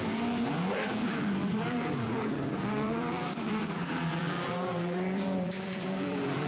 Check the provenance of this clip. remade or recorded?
remade